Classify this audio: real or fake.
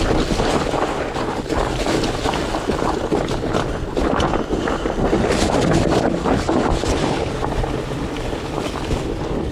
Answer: real